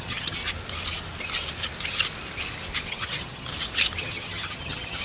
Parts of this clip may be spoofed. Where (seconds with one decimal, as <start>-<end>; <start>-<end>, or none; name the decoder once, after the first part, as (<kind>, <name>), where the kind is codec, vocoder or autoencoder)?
0.0-0.4 (vocoder, HiFi-GAN); 2.9-3.5; 4.0-5.0